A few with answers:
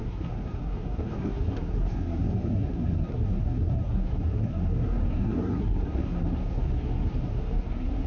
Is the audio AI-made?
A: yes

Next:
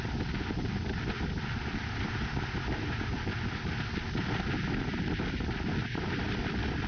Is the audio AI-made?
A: no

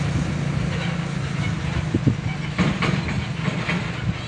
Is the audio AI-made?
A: no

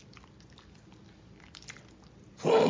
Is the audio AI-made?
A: no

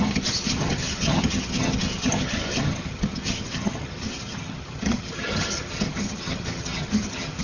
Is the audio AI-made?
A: yes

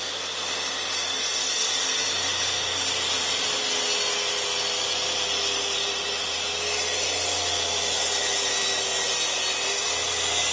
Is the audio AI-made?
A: no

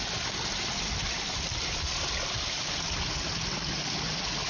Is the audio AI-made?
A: no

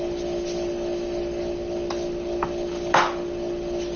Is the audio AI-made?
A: no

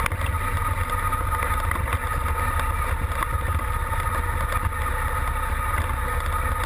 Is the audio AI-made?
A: no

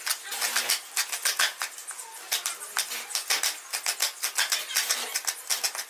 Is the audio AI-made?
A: no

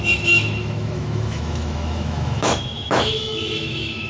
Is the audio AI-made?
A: yes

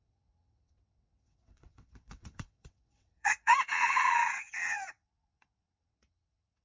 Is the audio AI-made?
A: yes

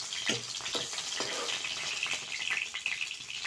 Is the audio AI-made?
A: no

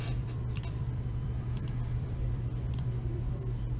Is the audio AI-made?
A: yes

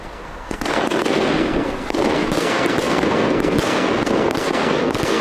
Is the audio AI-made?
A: yes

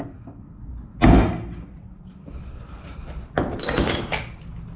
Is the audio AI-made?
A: no